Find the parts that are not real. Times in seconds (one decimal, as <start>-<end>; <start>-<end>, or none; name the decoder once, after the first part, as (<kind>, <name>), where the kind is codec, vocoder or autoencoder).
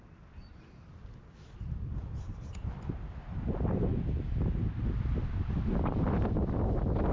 none